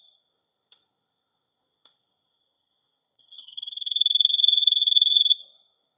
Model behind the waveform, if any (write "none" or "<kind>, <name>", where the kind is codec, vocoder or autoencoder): codec, SNAC